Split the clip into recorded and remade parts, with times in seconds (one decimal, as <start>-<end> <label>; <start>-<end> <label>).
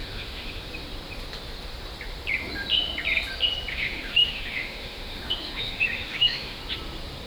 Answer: 0.0-0.7 remade; 0.7-3.7 recorded; 3.7-6.6 remade; 6.6-7.3 recorded